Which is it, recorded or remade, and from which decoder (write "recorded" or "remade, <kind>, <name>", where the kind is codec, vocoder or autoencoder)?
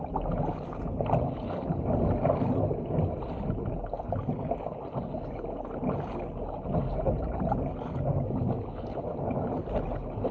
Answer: recorded